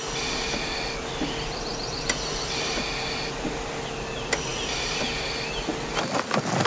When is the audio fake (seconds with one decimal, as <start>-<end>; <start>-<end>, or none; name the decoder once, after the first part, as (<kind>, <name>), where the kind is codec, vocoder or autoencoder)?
4.5-5.7 (vocoder, BigVGAN v2)